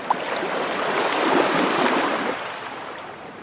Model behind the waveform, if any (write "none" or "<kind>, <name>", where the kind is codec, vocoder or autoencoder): vocoder, BigVGAN v2